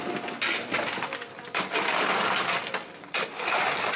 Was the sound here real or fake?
fake